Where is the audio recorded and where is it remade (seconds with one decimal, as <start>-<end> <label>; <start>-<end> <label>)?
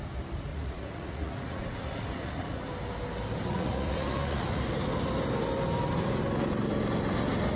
0.0-0.5 recorded; 0.5-2.6 remade; 2.6-3.5 recorded; 3.5-4.6 remade; 4.6-7.5 recorded